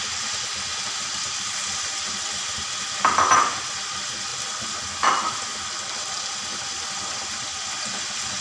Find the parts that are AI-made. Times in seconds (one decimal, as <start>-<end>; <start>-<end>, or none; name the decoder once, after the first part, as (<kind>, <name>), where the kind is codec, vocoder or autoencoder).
none